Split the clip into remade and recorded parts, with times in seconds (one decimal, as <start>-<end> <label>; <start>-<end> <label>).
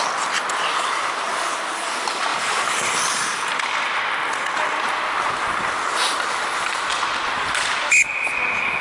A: 0.0-2.3 recorded; 2.3-3.4 remade; 3.4-8.8 recorded